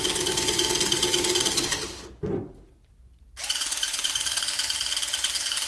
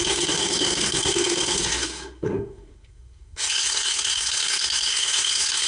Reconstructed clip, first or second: second